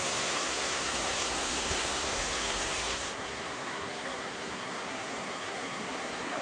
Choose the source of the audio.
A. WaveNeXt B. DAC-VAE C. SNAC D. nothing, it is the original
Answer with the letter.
C